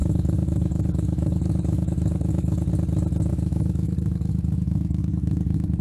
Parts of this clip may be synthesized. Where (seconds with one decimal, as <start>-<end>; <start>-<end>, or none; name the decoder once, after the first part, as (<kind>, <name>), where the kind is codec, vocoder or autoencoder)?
0.0-2.7 (codec, DAC); 3.3-5.8